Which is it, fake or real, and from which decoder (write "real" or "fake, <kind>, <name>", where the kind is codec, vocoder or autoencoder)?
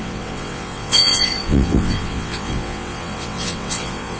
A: fake, vocoder, WaveNeXt